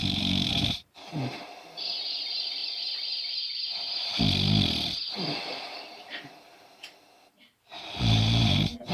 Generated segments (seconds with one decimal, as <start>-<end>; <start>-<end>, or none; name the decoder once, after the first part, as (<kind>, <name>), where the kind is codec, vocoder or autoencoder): 0.0-2.6 (vocoder, BigVGAN v2); 5.4-8.9